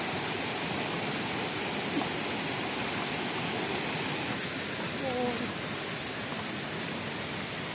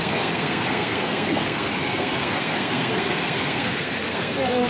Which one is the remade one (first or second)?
second